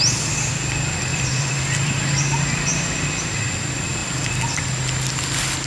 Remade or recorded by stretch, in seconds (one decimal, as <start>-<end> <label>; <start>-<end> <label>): 0.0-1.1 recorded; 1.1-2.2 remade; 2.2-5.7 recorded